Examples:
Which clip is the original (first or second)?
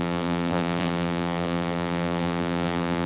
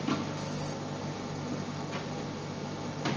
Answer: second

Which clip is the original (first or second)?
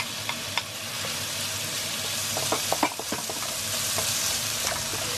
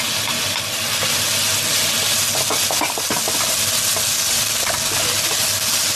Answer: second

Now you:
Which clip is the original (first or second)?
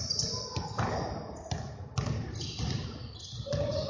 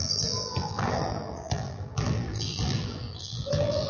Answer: first